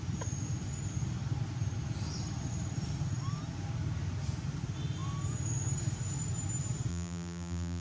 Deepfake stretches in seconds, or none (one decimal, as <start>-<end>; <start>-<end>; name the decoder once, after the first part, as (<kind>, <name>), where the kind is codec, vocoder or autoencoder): 6.9-7.8 (vocoder, BigVGAN v2)